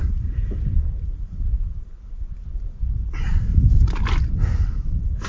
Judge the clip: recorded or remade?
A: recorded